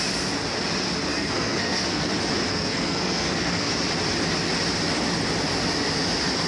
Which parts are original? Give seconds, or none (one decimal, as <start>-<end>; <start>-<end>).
0.0-1.1; 2.1-2.5; 3.7-6.5